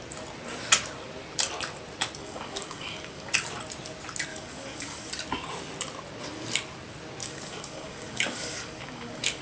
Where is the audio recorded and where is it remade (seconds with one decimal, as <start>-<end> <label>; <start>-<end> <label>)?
0.0-2.2 recorded; 2.2-3.3 remade; 3.3-4.3 recorded; 4.3-5.1 remade; 5.1-7.2 recorded; 7.2-9.4 remade